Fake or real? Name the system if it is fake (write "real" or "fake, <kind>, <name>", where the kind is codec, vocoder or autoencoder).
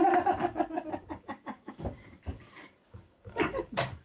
fake, codec, DAC